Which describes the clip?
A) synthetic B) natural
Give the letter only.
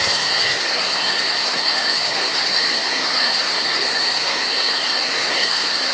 A